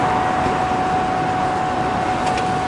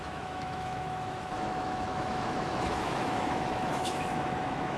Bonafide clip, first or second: first